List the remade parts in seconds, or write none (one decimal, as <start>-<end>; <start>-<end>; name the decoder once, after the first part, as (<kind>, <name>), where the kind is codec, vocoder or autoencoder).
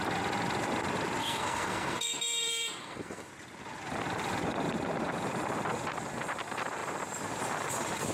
1.2-3.3 (codec, SNAC)